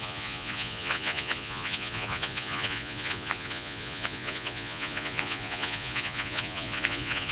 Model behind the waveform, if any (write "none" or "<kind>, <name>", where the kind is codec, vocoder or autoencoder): vocoder, Vocos